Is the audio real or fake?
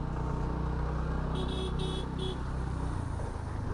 real